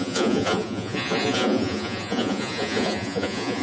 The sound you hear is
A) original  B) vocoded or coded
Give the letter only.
B